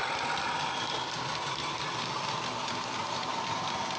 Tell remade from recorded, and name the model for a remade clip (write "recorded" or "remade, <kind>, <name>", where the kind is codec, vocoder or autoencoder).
recorded